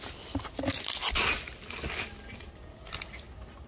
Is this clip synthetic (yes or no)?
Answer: no